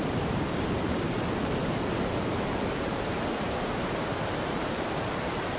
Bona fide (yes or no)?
no